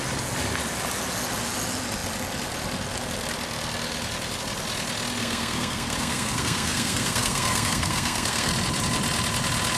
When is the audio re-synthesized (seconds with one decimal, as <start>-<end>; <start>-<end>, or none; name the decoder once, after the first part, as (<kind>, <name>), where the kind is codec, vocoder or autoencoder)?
5.2-8.5 (codec, SNAC)